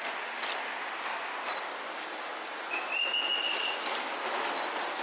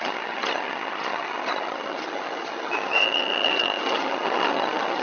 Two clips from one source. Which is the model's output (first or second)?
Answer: second